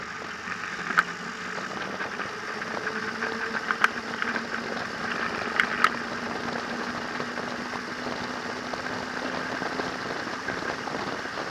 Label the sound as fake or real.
real